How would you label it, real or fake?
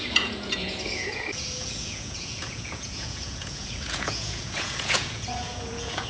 fake